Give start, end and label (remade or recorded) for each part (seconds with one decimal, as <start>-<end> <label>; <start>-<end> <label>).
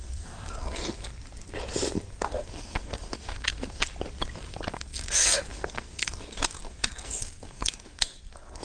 0.0-0.8 remade; 0.8-2.1 recorded; 2.1-3.9 remade; 3.9-4.4 recorded; 4.4-8.6 remade